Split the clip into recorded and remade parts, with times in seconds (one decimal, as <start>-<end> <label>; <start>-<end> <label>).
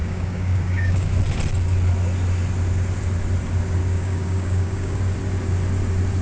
0.0-1.1 remade; 1.1-3.8 recorded; 3.8-5.0 remade; 5.0-6.2 recorded